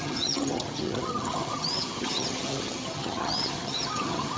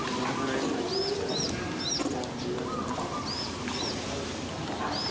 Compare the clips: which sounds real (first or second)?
second